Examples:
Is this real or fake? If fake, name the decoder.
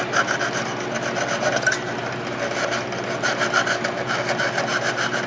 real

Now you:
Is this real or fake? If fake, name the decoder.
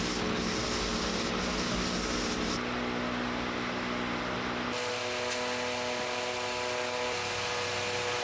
real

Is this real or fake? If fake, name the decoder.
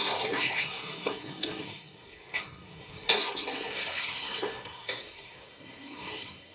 fake, codec, SNAC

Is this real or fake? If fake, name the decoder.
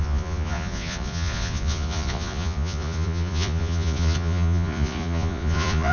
fake, vocoder, Vocos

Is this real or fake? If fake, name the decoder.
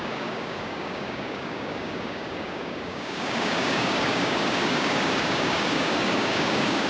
fake, codec, DAC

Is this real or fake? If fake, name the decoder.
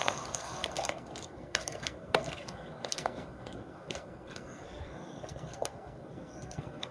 fake, codec, SNAC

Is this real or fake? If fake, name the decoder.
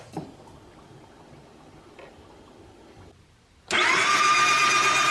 real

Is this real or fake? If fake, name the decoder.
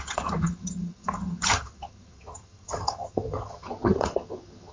fake, vocoder, HiFi-GAN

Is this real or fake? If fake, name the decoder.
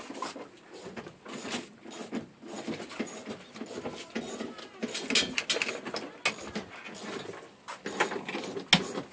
real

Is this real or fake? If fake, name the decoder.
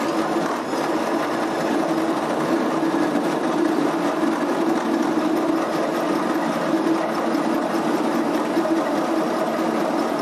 real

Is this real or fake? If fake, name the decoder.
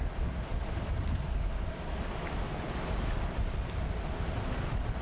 real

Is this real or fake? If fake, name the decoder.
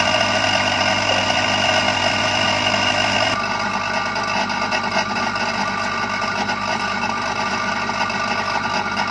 real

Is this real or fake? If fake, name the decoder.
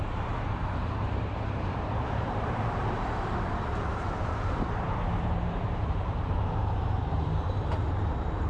fake, vocoder, BigVGAN v2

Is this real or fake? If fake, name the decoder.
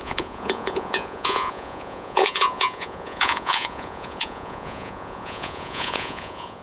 fake, vocoder, Vocos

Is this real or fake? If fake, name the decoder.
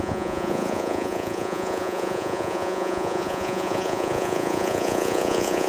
fake, vocoder, Vocos